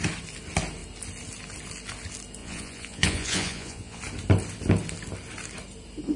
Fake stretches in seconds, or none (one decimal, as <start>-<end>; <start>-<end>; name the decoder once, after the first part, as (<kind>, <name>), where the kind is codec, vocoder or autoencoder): 2.4-4.0 (vocoder, Vocos)